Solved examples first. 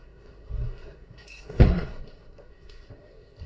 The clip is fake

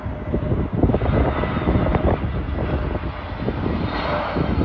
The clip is real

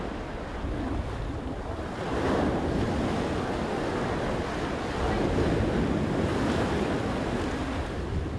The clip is real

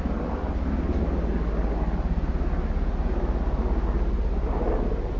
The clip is real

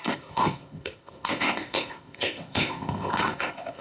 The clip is fake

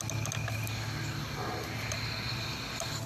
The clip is real